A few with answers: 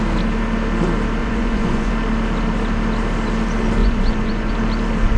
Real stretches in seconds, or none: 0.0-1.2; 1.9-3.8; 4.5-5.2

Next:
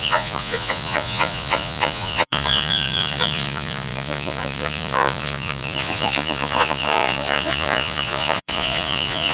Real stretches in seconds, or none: none

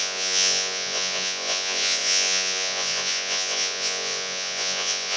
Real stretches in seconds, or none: none

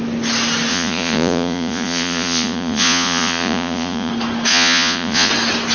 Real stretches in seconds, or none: 0.0-0.7; 4.1-4.5; 5.3-5.7

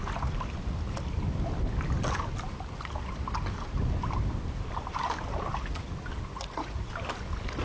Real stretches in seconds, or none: 0.0-6.3; 6.9-7.6